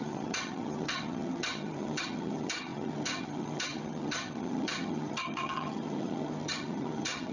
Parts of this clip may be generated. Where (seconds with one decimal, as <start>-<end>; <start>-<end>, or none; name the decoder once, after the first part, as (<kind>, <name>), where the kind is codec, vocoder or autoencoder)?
0.0-7.3 (vocoder, HiFi-GAN)